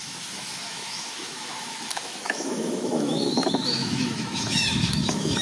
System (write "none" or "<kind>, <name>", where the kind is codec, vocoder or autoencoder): autoencoder, DAC-VAE